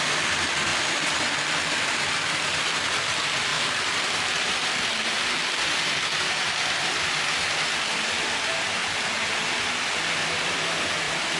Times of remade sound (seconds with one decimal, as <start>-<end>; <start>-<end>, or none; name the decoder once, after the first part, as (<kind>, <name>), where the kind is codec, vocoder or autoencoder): none